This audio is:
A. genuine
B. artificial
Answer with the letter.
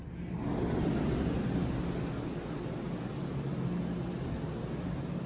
A